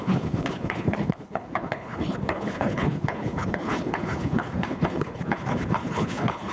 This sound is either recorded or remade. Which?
remade